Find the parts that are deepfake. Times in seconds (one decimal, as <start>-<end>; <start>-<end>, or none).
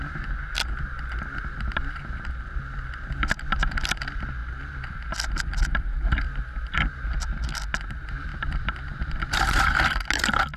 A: 8.3-9.7